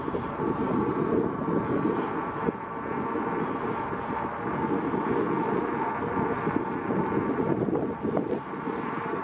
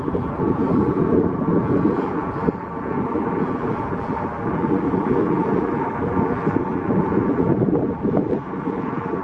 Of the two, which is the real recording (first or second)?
first